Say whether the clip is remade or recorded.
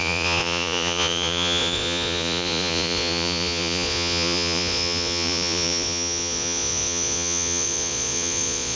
remade